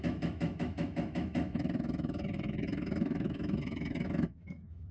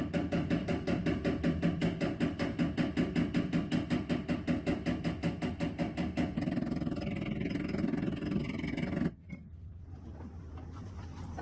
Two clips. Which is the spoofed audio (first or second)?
first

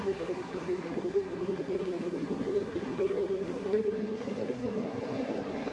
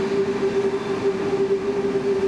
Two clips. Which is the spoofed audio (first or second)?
first